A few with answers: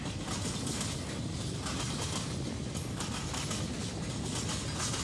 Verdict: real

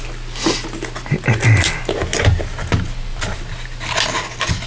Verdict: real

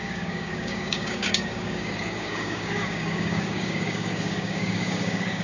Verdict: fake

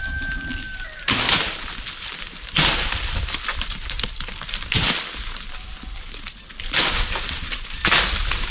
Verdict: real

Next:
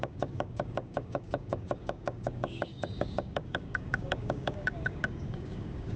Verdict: fake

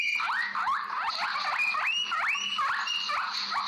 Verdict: real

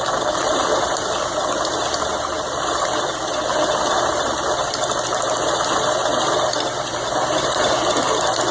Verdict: real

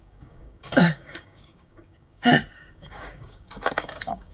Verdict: fake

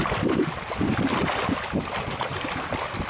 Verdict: real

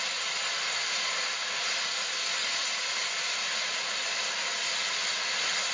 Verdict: real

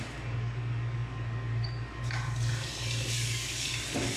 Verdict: fake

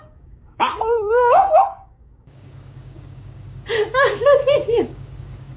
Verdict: fake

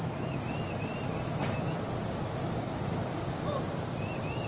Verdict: real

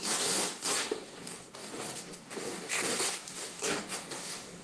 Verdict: fake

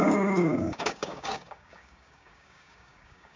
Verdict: fake